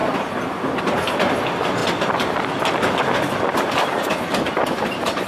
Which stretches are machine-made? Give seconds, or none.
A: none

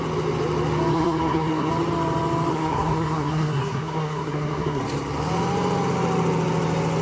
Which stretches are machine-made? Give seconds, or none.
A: 0.9-1.7; 2.5-4.8

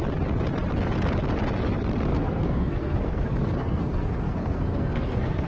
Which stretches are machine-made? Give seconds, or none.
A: 2.1-5.5